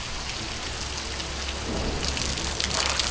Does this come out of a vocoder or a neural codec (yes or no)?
no